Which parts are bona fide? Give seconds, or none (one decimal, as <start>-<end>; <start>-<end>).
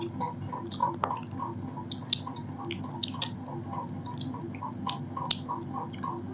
0.0-6.3